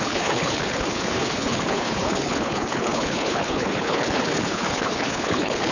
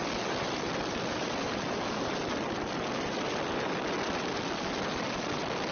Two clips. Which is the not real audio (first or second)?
first